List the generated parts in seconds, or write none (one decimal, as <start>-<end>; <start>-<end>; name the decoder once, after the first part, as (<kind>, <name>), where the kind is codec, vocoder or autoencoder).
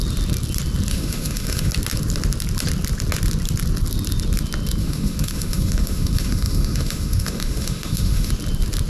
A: 0.9-1.7 (autoencoder, DAC-VAE); 4.8-8.3